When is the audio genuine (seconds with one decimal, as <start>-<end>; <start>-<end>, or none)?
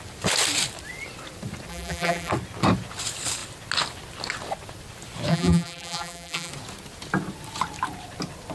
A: 0.0-1.7; 2.3-5.3; 6.5-8.5